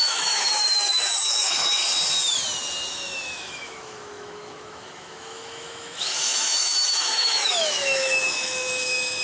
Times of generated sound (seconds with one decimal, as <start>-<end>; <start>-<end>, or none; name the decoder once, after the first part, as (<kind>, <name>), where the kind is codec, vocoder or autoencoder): 0.0-1.8 (autoencoder, DAC-VAE); 2.9-9.2